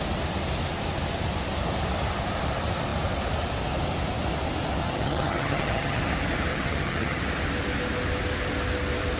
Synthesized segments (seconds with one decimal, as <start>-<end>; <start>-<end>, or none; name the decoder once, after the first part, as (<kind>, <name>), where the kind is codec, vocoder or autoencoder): 4.8-6.0 (vocoder, HiFi-GAN); 6.5-7.2